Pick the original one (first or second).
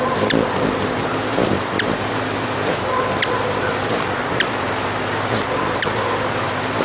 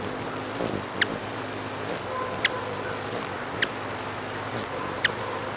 second